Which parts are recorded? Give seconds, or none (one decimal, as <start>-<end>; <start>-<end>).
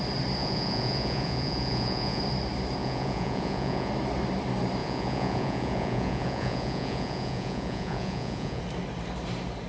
0.0-0.4; 2.2-2.8; 3.9-4.8; 8.6-9.7